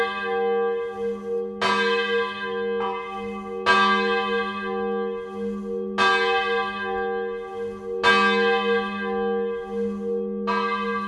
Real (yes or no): yes